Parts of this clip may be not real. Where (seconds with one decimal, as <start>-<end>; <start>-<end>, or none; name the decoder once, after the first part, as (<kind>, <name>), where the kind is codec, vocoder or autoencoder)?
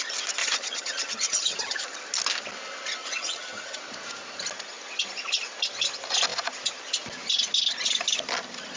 0.4-1.8 (vocoder, HiFi-GAN); 3.0-3.8